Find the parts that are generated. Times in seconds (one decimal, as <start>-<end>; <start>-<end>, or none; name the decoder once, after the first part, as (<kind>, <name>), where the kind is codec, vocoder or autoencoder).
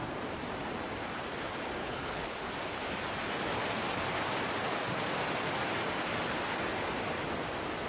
1.8-2.5 (codec, HILCodec)